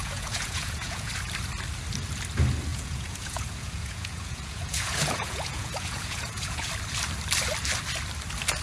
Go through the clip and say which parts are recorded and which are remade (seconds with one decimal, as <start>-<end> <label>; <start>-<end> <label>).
0.0-1.1 remade; 1.1-2.7 recorded; 2.7-6.7 remade; 6.7-8.6 recorded